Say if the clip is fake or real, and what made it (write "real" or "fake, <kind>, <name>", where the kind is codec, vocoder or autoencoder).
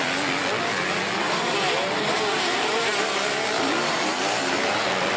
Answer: real